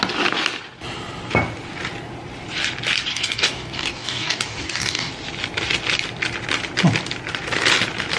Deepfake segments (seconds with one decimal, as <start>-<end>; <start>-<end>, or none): 3.1-5.1